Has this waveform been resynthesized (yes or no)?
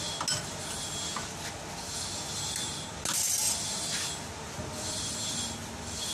no